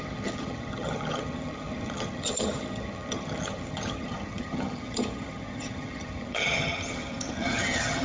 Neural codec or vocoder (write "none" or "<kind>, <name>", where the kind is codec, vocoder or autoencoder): vocoder, HiFi-GAN